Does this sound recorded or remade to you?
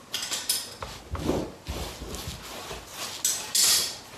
recorded